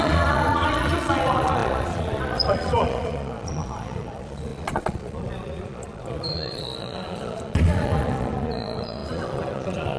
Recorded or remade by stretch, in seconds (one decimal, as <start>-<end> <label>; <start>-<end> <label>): 0.0-10.0 remade